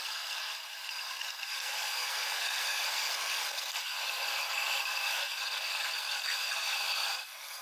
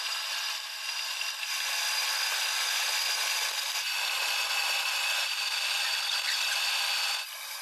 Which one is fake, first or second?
first